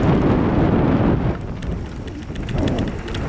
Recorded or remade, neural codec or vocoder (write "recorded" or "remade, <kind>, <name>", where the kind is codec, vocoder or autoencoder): recorded